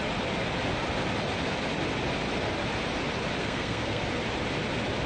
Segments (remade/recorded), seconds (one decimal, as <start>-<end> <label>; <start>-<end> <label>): 0.0-3.4 recorded; 3.4-4.0 remade; 4.0-5.1 recorded